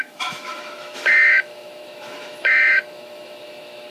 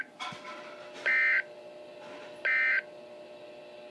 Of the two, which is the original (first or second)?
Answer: second